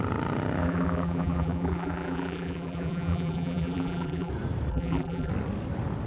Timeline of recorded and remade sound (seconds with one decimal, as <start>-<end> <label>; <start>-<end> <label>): 0.0-0.6 recorded; 0.6-4.3 remade; 4.3-4.7 recorded; 4.7-5.3 remade; 5.3-6.1 recorded